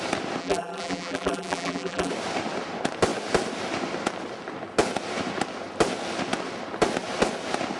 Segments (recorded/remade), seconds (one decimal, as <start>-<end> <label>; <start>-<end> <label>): 0.0-0.4 recorded; 0.4-2.1 remade; 2.1-7.8 recorded